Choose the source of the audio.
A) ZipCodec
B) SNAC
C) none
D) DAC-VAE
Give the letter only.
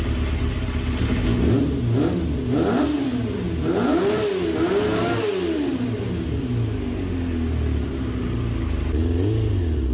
C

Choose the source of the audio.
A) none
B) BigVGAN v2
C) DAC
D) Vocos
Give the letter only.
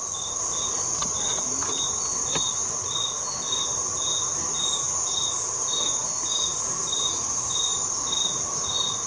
A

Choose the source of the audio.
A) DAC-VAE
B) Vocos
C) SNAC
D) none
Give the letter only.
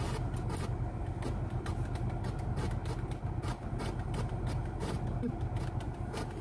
D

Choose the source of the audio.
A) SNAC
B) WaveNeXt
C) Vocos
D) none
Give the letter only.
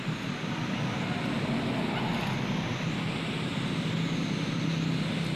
D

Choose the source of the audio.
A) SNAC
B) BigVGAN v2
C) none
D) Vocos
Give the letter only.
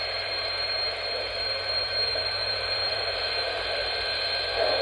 B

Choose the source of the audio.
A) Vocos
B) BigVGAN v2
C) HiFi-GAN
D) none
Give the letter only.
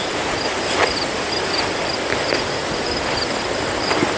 D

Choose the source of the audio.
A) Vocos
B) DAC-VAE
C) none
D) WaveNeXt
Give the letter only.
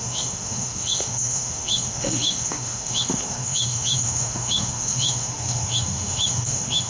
B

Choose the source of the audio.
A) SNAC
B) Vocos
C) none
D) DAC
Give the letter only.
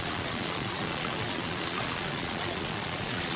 B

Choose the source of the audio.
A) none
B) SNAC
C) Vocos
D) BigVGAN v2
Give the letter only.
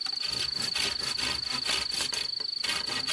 A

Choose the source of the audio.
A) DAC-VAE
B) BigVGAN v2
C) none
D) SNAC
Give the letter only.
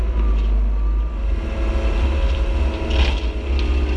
C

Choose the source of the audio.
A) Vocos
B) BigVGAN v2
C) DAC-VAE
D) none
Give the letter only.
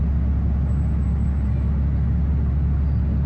D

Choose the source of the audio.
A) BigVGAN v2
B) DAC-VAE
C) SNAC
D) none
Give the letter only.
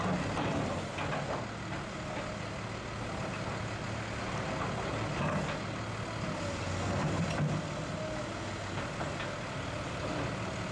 D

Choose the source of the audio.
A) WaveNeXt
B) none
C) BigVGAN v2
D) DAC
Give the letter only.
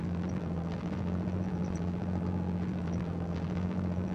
C